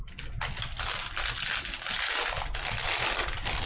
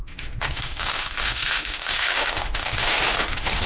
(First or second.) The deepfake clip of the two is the second